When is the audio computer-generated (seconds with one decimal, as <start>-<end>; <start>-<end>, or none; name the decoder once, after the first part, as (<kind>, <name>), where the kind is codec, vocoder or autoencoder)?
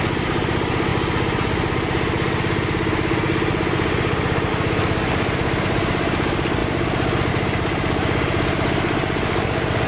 none